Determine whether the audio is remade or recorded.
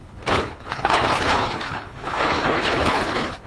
remade